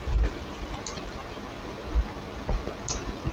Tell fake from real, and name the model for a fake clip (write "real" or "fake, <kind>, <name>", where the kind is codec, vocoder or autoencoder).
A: real